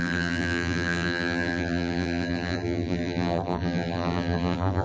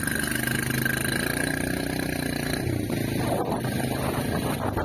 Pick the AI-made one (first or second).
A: first